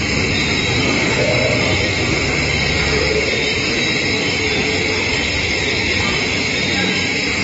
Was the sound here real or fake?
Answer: real